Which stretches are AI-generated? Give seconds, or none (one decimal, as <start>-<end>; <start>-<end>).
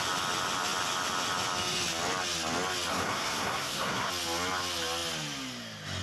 2.9-4.1